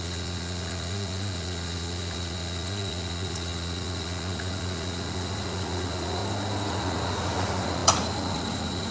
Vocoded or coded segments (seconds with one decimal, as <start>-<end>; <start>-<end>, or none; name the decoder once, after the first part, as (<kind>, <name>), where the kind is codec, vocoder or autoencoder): 0.0-6.2 (vocoder, Vocos); 6.7-8.9